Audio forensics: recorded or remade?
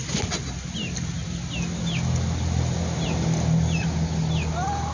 recorded